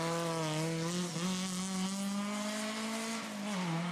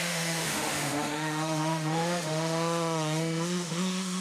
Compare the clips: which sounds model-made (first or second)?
second